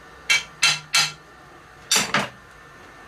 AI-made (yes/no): no